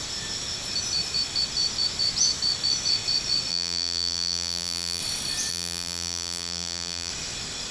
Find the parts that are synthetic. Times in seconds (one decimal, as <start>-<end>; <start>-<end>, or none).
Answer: 3.5-5.0; 5.5-7.1